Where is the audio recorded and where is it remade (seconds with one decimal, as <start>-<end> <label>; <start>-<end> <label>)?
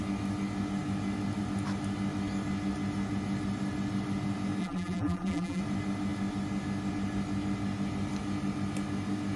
0.0-4.6 recorded; 4.6-5.6 remade; 5.6-9.4 recorded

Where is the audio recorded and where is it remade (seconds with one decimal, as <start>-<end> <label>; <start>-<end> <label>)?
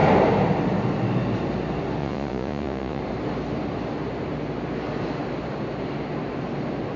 0.0-2.0 recorded; 2.0-3.0 remade; 3.0-7.0 recorded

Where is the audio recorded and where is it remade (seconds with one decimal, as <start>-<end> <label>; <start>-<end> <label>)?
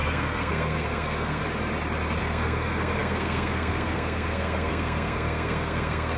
0.0-1.4 remade; 1.4-2.2 recorded; 2.2-6.2 remade